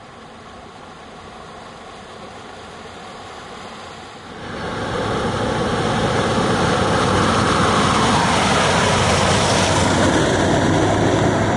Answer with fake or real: real